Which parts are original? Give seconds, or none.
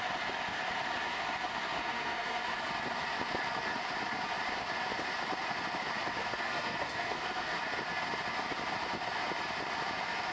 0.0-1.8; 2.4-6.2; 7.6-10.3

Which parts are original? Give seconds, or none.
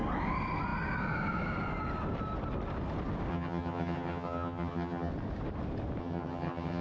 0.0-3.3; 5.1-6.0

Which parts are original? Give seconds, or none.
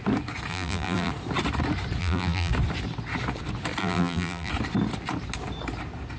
0.0-0.5; 1.1-2.0; 2.5-3.8; 4.5-6.2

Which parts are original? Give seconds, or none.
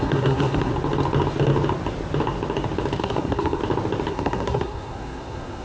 0.7-3.0; 3.6-4.1